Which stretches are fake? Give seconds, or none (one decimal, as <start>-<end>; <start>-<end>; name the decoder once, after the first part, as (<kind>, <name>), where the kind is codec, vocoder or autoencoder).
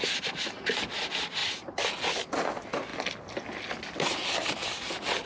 none